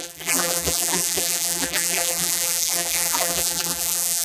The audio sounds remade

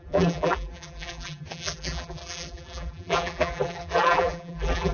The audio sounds remade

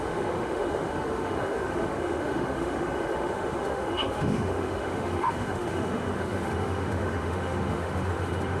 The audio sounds remade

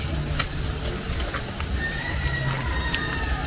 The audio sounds recorded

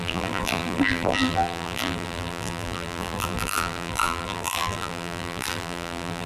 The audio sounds remade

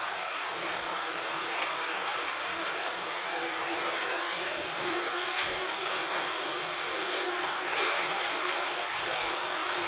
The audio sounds remade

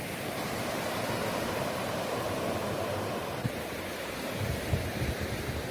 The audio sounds remade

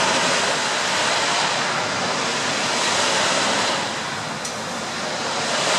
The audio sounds recorded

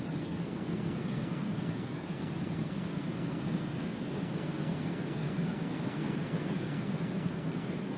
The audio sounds remade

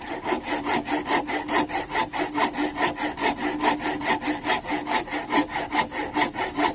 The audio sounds recorded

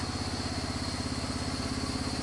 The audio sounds recorded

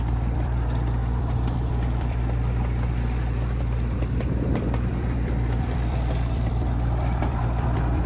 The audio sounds remade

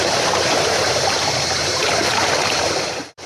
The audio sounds remade